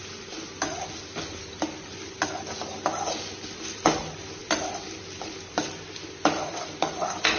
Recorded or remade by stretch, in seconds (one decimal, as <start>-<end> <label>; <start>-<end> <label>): 0.0-3.6 recorded; 3.6-4.4 remade; 4.4-5.0 recorded; 5.0-7.4 remade